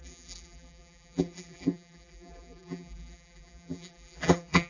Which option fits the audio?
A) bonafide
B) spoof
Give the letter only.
B